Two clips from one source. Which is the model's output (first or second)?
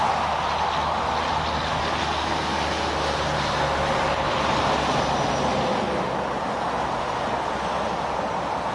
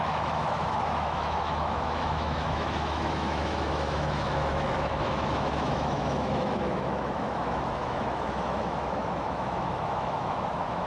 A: second